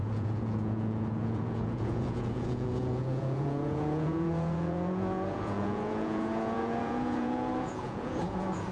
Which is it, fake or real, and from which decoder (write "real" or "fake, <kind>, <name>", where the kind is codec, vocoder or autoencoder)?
fake, vocoder, Vocos